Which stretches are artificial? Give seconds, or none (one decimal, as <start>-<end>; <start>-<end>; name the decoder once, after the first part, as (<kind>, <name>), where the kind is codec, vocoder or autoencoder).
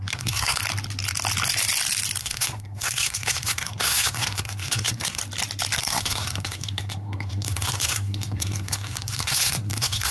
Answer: 0.0-0.6 (codec, SNAC); 2.2-5.2; 5.8-10.1